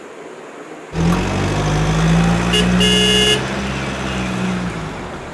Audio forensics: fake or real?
real